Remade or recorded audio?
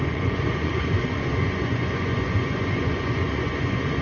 remade